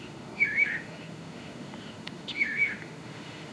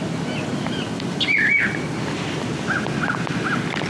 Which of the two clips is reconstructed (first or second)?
first